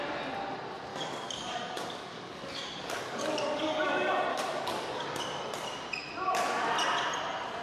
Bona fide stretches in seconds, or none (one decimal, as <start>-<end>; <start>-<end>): 0.0-0.9; 3.9-4.3; 5.2-7.6